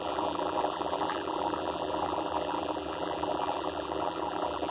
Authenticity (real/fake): fake